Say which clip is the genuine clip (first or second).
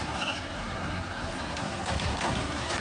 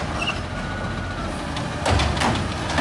second